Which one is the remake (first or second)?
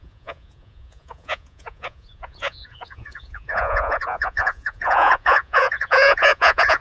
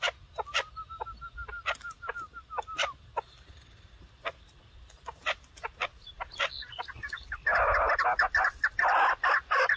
first